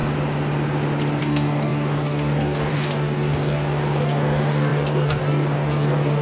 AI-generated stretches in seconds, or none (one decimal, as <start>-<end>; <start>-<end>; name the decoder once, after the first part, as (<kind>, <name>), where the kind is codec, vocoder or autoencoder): 1.2-6.2 (codec, DAC)